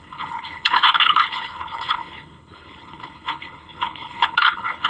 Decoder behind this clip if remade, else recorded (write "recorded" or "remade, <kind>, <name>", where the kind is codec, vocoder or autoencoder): remade, codec, HILCodec